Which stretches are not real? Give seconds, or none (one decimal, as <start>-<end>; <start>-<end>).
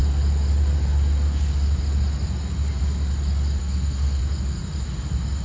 3.6-4.2